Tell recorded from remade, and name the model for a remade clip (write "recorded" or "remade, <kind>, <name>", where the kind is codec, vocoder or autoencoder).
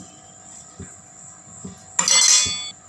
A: recorded